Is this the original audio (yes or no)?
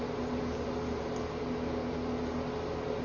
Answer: yes